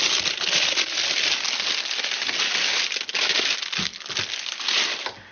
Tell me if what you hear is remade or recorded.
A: recorded